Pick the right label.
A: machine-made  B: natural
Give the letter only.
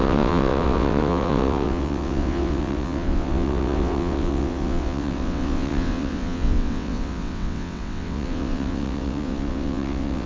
A